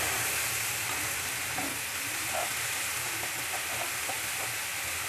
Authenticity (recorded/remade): recorded